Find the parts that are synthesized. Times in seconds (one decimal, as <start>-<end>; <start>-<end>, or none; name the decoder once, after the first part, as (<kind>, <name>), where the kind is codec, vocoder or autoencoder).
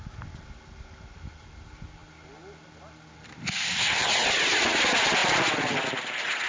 none